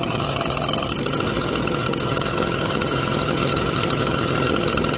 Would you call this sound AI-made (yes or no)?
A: yes